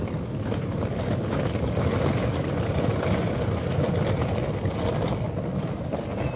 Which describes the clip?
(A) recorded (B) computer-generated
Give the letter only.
A